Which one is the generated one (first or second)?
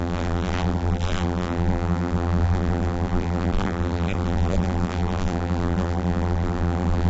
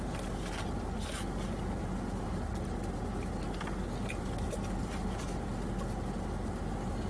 first